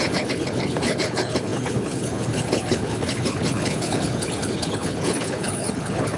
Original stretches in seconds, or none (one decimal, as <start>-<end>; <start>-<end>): none